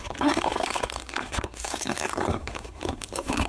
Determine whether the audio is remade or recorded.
remade